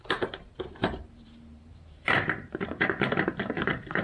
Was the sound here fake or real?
fake